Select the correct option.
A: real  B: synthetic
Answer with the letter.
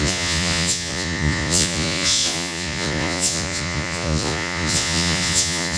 B